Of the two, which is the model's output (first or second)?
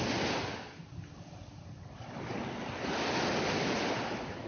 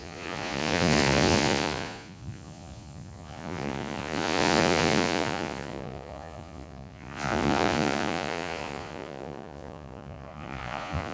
second